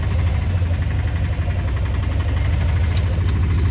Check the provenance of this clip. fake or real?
real